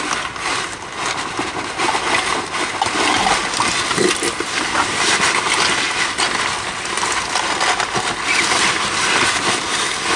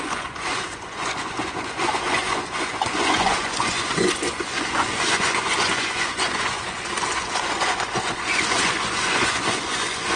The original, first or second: first